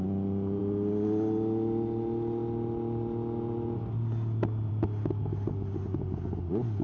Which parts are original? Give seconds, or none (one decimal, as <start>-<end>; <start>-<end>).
0.0-6.8